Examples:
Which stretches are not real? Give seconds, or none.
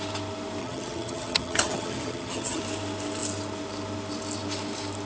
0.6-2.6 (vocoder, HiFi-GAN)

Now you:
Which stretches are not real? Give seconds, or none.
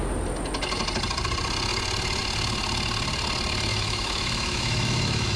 3.7-5.4 (autoencoder, DAC-VAE)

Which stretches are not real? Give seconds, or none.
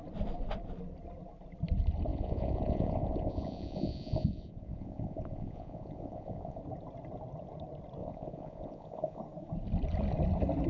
2.1-6.6 (vocoder, Vocos); 8.0-9.2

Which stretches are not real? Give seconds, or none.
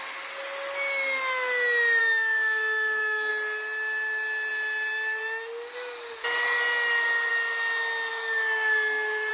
2.0-3.3 (codec, DAC); 8.1-9.3